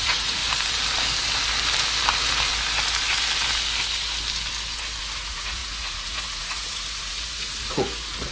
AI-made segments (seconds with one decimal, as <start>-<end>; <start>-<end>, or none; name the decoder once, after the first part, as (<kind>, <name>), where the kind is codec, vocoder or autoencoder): 0.0-0.4 (vocoder, Vocos); 5.0-8.3